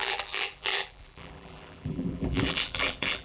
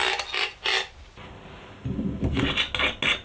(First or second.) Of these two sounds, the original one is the second